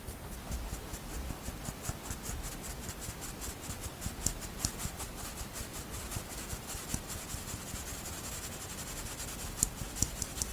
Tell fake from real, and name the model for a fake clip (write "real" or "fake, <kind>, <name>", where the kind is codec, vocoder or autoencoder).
real